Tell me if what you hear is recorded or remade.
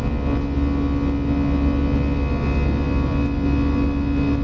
recorded